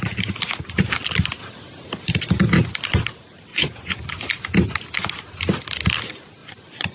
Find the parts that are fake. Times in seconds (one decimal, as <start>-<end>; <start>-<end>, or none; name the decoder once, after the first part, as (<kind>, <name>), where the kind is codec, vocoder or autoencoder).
3.5-4.0 (vocoder, Vocos); 6.4-6.9